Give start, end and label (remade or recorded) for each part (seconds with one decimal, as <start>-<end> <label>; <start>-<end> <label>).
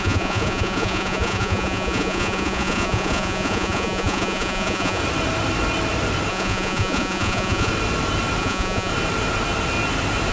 0.0-5.0 remade; 5.0-6.3 recorded; 6.3-7.7 remade; 7.7-8.4 recorded; 8.4-8.9 remade; 8.9-10.3 recorded